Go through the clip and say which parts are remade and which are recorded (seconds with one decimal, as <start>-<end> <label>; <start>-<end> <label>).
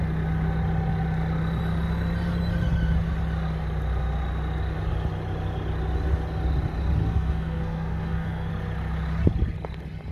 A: 0.0-7.0 recorded; 7.0-8.5 remade; 8.5-10.1 recorded